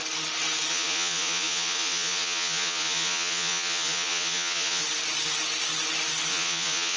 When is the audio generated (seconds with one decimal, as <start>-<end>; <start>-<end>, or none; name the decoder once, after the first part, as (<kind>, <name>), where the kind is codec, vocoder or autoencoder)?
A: 0.7-4.8 (vocoder, Vocos); 6.3-7.0